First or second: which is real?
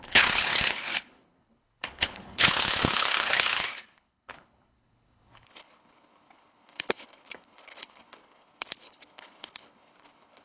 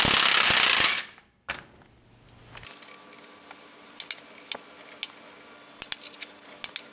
second